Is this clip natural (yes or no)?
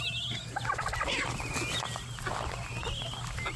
yes